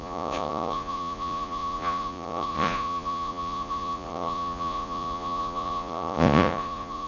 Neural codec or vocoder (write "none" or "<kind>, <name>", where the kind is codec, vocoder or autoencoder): vocoder, Vocos